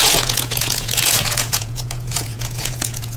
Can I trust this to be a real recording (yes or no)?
no